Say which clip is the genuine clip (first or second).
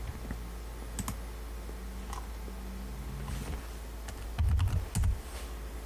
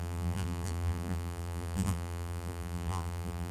first